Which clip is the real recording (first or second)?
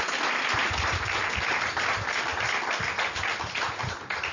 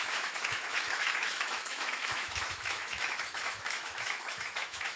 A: first